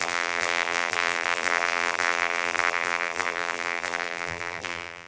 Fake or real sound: fake